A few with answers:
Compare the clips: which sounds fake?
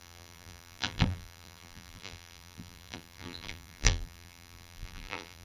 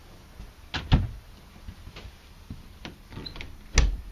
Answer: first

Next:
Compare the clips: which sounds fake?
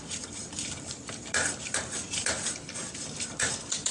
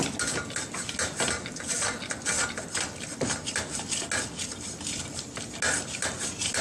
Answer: first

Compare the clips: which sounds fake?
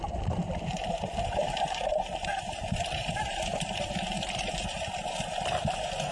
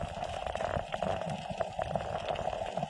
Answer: first